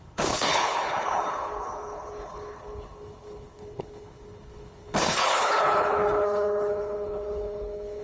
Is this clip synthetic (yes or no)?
yes